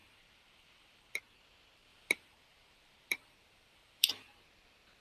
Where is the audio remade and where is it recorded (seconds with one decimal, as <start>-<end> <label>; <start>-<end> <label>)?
0.0-1.2 remade; 1.2-1.9 recorded; 1.9-4.1 remade; 4.1-5.0 recorded